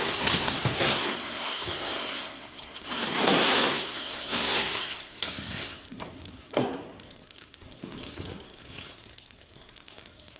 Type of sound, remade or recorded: remade